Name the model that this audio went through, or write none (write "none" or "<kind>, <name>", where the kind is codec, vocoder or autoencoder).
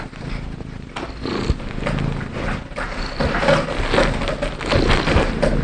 none